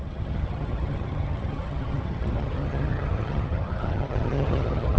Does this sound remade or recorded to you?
remade